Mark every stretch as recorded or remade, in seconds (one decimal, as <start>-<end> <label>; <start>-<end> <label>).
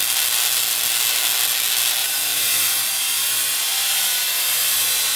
0.0-2.0 recorded; 2.0-2.7 remade; 2.7-5.2 recorded